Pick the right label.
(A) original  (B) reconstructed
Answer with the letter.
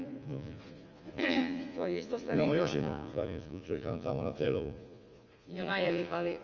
B